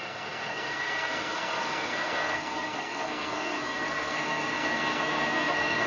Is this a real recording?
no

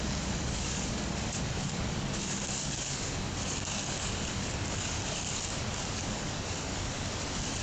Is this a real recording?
no